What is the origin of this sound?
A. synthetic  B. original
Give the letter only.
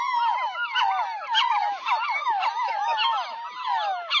B